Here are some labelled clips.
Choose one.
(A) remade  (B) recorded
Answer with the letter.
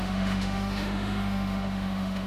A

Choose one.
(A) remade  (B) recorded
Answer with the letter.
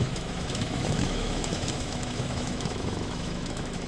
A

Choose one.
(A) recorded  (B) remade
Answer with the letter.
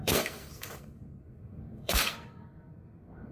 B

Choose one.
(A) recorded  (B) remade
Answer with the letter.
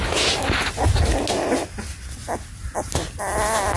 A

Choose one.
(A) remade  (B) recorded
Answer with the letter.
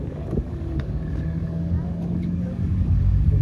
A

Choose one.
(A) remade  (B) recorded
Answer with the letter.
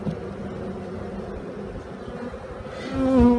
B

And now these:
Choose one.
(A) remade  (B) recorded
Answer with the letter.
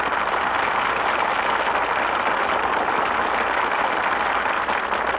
B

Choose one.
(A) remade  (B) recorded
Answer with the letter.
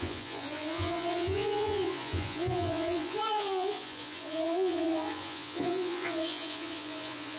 A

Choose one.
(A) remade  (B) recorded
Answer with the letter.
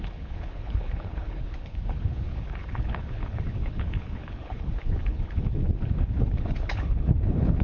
A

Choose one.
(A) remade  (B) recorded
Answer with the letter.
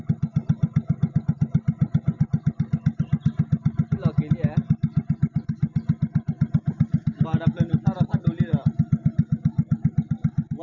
B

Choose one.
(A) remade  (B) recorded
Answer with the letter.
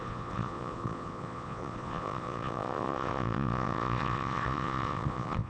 A